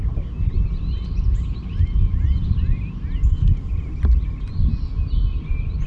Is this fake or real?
real